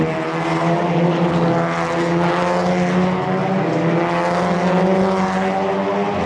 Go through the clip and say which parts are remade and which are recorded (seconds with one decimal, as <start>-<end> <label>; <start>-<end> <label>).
0.0-6.3 recorded